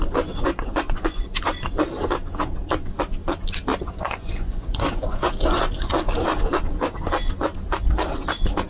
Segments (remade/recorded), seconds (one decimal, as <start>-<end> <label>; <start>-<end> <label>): 0.0-0.5 recorded; 0.5-1.4 remade; 1.4-3.7 recorded; 3.7-5.9 remade; 5.9-8.7 recorded